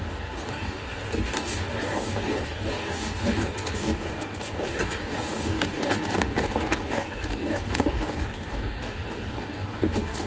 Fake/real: fake